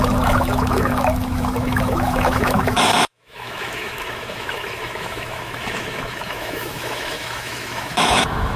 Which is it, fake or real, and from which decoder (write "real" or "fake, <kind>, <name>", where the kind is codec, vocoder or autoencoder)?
fake, autoencoder, DAC-VAE